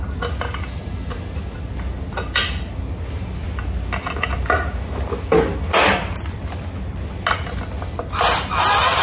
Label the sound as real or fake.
real